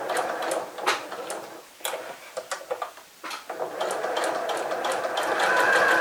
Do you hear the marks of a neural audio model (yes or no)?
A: no